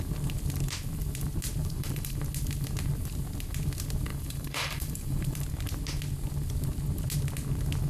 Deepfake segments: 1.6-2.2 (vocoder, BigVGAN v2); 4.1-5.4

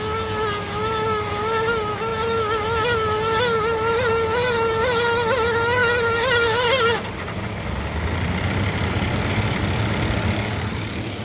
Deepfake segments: none

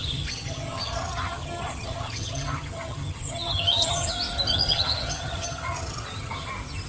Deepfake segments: 0.0-4.1 (vocoder, HiFi-GAN); 4.5-6.5

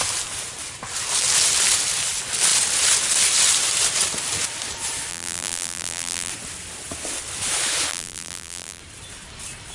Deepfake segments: 5.1-6.3 (vocoder, BigVGAN v2); 7.9-8.8

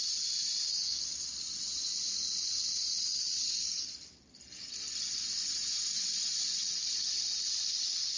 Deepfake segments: none

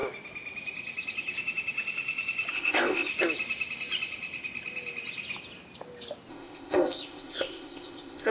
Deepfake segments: 2.5-3.1 (codec, ZipCodec); 6.3-8.3

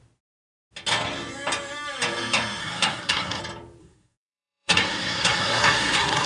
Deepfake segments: 2.6-3.4 (codec, SNAC); 3.8-6.3

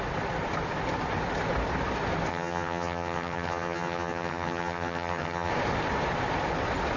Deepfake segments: 2.3-5.5 (vocoder, HiFi-GAN)